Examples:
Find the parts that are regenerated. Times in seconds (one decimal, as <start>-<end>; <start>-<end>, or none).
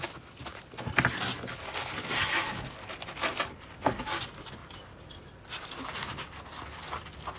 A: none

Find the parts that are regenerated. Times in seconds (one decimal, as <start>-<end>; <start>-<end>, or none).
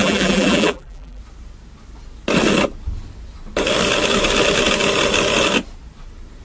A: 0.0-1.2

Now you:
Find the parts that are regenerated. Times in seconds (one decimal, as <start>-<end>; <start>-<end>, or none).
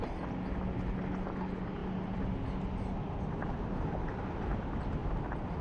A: none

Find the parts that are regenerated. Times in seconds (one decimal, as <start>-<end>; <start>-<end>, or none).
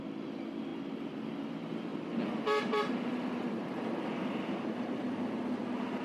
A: 0.7-1.3; 1.9-5.5